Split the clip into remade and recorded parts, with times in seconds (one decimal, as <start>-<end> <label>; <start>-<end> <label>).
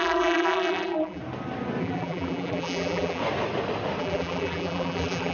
0.0-1.2 remade; 1.2-1.8 recorded; 1.8-3.2 remade; 3.2-4.0 recorded; 4.0-5.3 remade